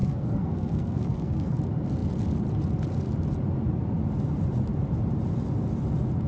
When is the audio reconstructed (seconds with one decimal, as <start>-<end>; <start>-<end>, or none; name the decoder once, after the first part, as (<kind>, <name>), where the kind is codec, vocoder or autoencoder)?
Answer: 0.0-1.6 (codec, SNAC)